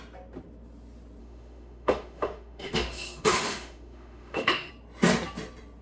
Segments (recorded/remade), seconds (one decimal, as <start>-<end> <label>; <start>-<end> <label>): 0.0-1.2 recorded; 1.2-4.7 remade; 4.7-5.8 recorded